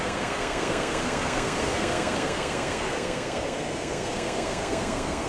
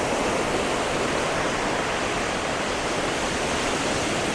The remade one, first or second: first